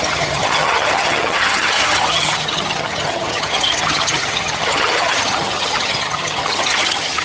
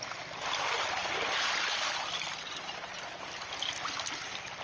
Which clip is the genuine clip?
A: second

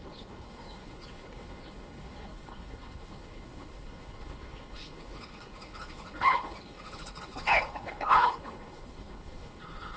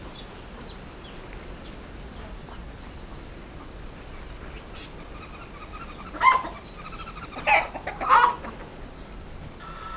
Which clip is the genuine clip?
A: second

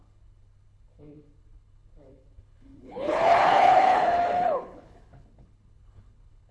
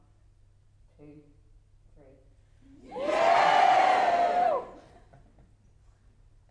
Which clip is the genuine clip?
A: second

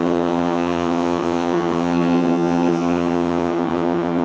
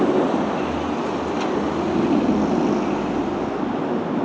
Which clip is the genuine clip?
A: second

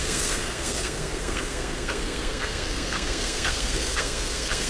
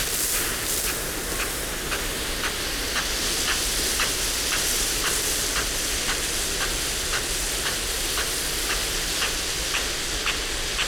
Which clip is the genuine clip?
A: second